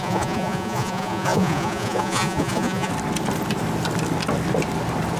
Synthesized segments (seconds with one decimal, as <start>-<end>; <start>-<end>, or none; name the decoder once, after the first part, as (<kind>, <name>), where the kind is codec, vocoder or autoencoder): 0.0-2.9 (vocoder, Vocos)

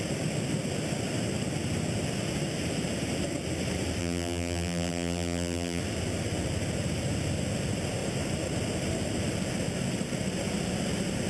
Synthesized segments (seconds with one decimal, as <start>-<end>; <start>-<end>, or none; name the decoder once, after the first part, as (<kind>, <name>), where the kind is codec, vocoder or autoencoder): 4.0-5.8 (vocoder, BigVGAN v2)

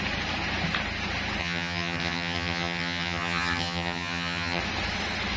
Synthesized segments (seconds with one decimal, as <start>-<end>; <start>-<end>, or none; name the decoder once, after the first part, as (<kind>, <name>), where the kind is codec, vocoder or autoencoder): 1.4-4.6 (vocoder, HiFi-GAN)

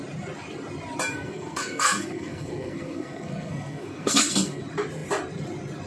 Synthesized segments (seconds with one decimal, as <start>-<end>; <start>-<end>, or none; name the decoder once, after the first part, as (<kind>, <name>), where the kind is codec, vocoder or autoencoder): 1.1-4.6 (codec, SNAC)

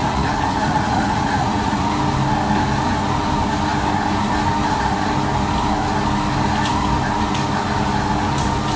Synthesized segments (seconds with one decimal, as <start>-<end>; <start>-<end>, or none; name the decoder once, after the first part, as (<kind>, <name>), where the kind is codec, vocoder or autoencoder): 0.0-1.9 (vocoder, Vocos)

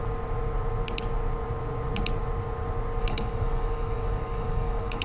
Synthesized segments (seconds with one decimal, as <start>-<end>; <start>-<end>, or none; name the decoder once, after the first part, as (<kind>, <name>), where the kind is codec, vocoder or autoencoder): 3.0-5.0 (codec, DAC)